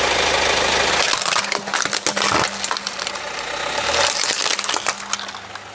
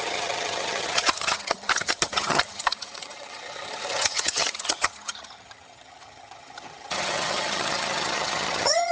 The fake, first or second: second